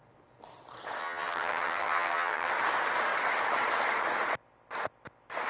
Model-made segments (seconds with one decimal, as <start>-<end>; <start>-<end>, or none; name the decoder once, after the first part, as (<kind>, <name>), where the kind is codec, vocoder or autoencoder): 1.0-2.5 (vocoder, HiFi-GAN)

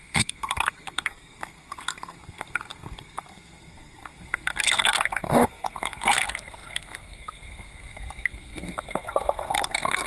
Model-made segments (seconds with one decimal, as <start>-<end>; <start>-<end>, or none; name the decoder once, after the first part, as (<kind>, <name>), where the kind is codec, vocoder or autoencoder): 0.0-10.1 (codec, SNAC)

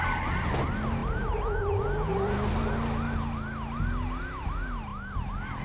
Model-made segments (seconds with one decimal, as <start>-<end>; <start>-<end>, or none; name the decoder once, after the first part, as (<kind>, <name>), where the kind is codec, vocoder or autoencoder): none

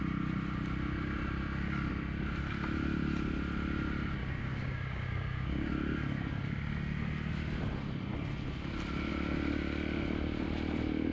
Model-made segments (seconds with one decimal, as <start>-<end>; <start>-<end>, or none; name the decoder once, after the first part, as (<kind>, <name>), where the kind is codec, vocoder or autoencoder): 4.2-5.7 (codec, DAC)